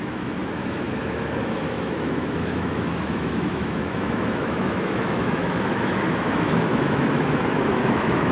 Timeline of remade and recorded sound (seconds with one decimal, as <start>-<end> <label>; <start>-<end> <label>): 0.0-8.3 remade